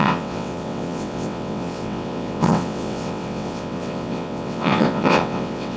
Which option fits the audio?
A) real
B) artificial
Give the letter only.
B